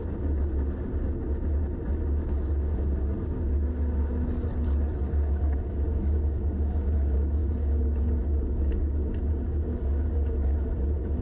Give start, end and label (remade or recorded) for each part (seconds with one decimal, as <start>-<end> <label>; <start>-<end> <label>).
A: 0.0-4.5 recorded; 4.5-5.0 remade; 5.0-11.2 recorded